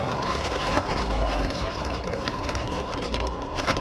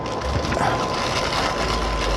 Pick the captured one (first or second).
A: second